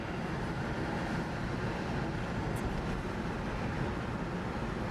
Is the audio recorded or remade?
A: recorded